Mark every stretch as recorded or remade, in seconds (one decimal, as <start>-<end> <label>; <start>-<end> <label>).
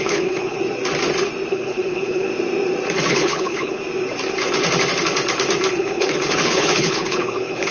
0.0-0.6 remade; 0.6-1.5 recorded; 1.5-2.3 remade; 2.3-3.1 recorded; 3.1-3.8 remade; 3.8-5.8 recorded; 5.8-7.7 remade